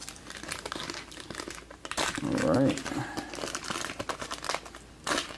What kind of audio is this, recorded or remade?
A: recorded